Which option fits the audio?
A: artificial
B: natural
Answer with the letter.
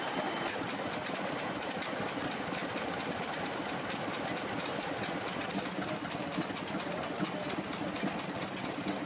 B